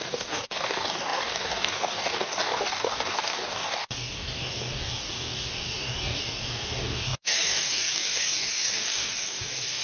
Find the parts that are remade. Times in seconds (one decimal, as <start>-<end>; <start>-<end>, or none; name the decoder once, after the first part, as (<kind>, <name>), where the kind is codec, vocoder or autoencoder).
0.0-9.8 (codec, DAC)